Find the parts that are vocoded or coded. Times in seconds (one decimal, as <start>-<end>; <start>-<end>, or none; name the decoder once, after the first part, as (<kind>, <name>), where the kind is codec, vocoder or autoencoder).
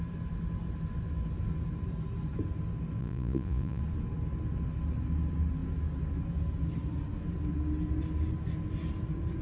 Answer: 3.0-3.8 (vocoder, Vocos)